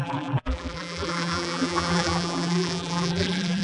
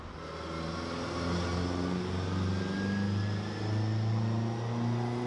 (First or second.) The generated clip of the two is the first